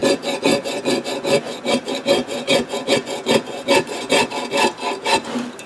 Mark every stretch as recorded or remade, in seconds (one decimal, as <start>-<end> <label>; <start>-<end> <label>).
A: 0.0-1.6 remade; 1.6-2.2 recorded; 2.2-4.3 remade; 4.3-5.7 recorded